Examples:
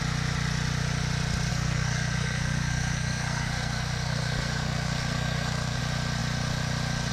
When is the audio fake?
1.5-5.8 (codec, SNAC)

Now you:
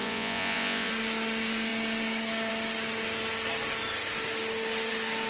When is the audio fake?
0.0-0.9 (vocoder, Vocos)

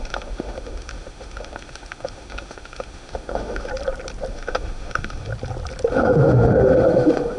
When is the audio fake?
0.0-3.7 (autoencoder, DAC-VAE); 4.3-5.3; 5.9-7.4

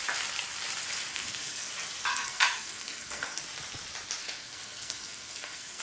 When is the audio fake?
1.1-1.7 (codec, SNAC); 2.1-3.4; 4.2-5.8

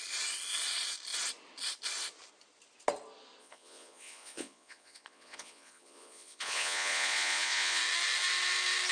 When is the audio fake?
3.4-7.8 (vocoder, Vocos)

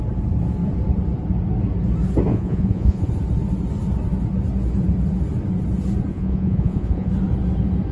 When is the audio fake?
2.3-3.1 (vocoder, Vocos); 6.1-7.1

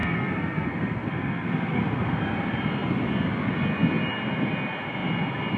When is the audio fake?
0.0-2.2 (codec, SNAC)